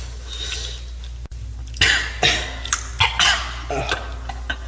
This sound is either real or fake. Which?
real